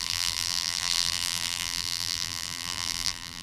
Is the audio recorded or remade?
remade